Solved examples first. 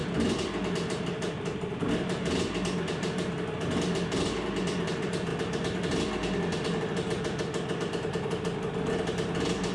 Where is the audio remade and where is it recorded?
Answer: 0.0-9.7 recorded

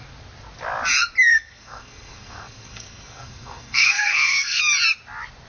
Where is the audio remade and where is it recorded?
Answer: 0.0-1.3 recorded; 1.3-4.6 remade; 4.6-5.5 recorded

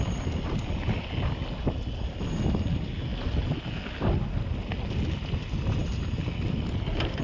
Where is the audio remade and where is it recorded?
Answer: 0.0-7.2 recorded

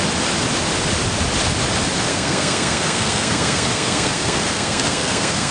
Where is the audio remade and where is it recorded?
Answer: 0.0-2.1 recorded; 2.1-5.5 remade

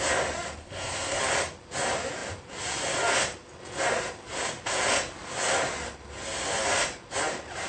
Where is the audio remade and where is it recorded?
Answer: 0.0-0.6 recorded; 0.6-1.2 remade; 1.2-7.7 recorded

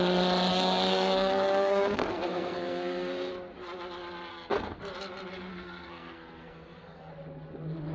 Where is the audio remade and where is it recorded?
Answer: 0.0-0.5 recorded; 0.5-3.3 remade; 3.3-4.3 recorded; 4.3-4.8 remade; 4.8-5.5 recorded; 5.5-7.1 remade; 7.1-7.9 recorded